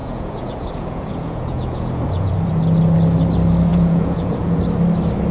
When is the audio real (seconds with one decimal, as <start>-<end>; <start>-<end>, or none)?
2.3-3.7; 4.6-5.3